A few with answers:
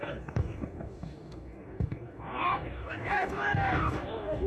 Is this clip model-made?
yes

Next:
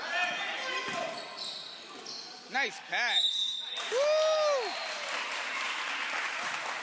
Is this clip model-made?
no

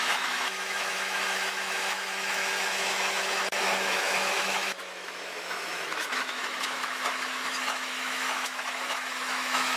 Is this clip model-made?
yes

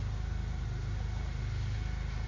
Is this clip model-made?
no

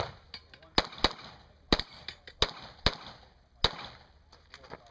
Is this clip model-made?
no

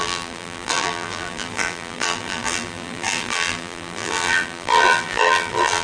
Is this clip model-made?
yes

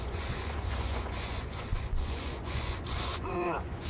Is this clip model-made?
yes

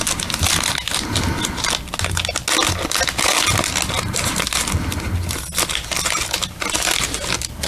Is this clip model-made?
no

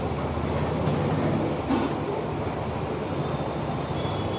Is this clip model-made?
no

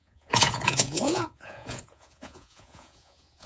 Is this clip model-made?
yes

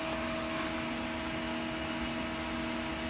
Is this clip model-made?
no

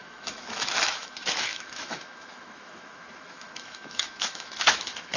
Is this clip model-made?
yes